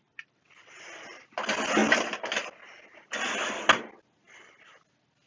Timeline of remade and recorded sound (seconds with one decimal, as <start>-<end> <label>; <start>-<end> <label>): 0.0-5.3 recorded